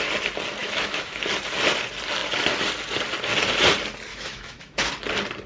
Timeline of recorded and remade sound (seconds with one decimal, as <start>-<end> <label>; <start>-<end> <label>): 0.0-0.6 recorded; 0.6-1.2 remade; 1.2-4.1 recorded; 4.1-4.9 remade; 4.9-5.5 recorded